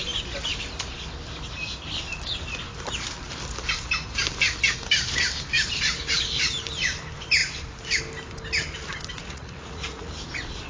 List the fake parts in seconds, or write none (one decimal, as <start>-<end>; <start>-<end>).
9.2-10.1